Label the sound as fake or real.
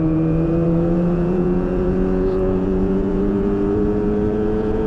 fake